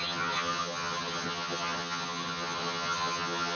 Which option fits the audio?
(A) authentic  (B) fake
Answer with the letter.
B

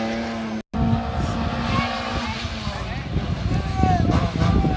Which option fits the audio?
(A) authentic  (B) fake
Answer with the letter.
A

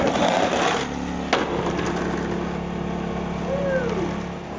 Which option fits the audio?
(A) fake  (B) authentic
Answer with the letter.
B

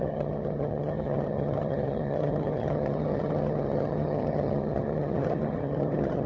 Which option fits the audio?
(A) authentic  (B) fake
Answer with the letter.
B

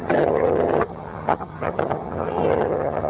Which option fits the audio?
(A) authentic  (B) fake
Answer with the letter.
B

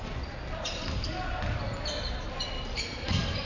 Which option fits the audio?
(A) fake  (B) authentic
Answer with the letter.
B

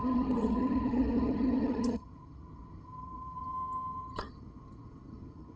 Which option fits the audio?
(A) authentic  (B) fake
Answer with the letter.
B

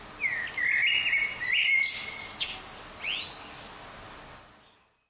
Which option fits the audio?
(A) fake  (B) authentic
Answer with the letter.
B